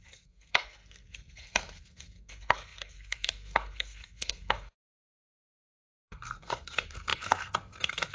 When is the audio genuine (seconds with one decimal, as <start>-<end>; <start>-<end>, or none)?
none